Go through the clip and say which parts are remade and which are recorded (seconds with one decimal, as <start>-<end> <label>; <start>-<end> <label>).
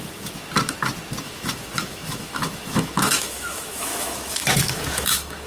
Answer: 0.0-0.4 remade; 0.4-1.2 recorded; 1.2-5.5 remade